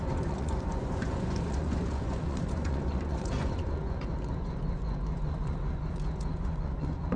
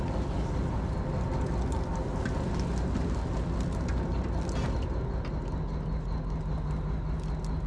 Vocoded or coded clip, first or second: first